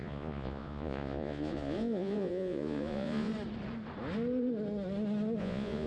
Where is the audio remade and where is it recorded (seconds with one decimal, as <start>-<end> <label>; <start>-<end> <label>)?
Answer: 0.0-3.3 remade; 3.3-5.4 recorded; 5.4-5.9 remade